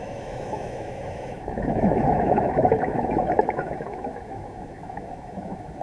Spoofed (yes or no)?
yes